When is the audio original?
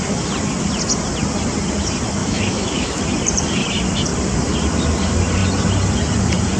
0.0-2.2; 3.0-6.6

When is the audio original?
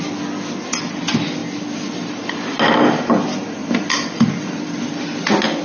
0.0-1.4; 2.2-3.6; 5.0-5.6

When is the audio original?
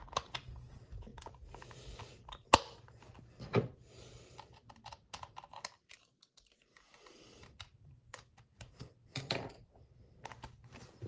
0.0-7.3; 9.8-11.1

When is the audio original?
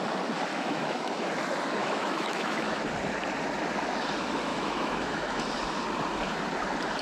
0.0-0.5; 1.2-1.8; 2.8-4.5; 5.4-7.0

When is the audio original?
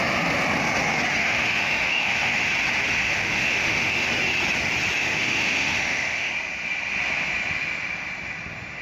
0.0-1.2; 2.5-2.9; 4.1-5.0; 6.3-8.8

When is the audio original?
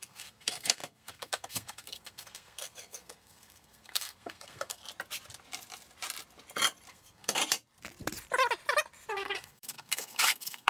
4.8-6.9; 7.4-9.1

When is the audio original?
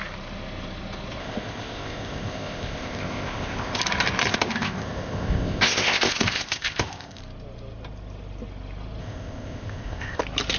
0.0-1.2; 3.8-4.3; 7.2-9.0; 10.2-10.6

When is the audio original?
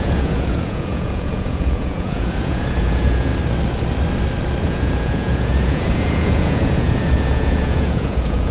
3.3-4.6